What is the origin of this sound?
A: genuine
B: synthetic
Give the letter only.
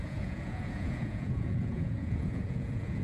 B